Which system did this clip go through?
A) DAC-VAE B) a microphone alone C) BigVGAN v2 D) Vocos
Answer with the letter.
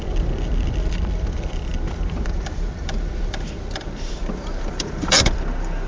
C